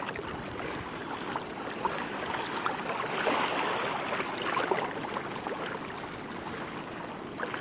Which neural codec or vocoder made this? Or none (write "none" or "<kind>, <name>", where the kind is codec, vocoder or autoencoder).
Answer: none